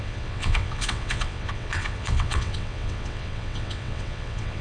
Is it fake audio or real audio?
fake